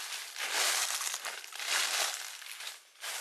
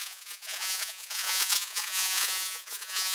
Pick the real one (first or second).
first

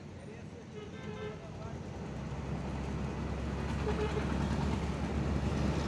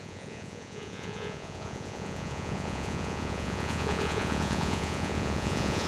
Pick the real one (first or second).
first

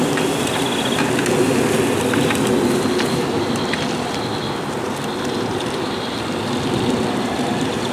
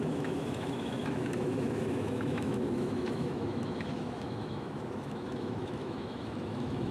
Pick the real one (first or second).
first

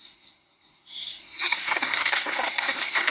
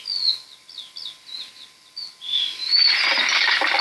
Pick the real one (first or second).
second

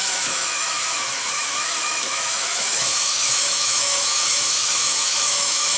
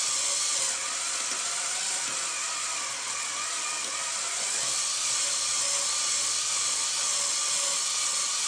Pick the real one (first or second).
second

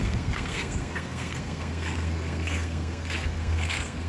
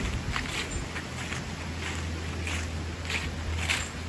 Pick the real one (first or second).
second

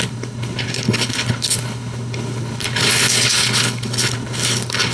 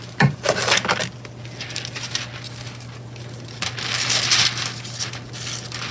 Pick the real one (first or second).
second